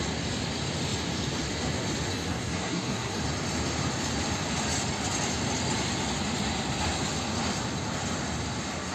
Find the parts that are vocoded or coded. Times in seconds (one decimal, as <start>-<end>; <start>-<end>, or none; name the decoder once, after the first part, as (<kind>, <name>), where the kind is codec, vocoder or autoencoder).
2.1-3.2 (codec, SNAC)